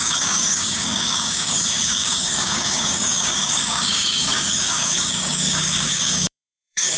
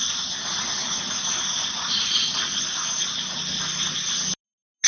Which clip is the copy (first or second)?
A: first